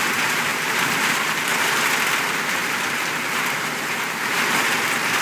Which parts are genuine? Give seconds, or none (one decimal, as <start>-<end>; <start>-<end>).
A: 0.0-0.5; 1.4-2.6; 4.4-5.2